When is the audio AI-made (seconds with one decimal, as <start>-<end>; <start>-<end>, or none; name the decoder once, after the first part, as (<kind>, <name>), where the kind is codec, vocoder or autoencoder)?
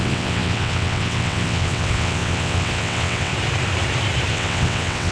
0.0-3.3 (vocoder, WaveNeXt); 4.3-5.1